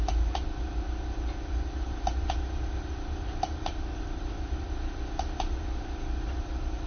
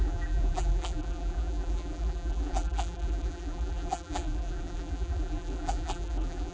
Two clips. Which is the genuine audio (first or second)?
first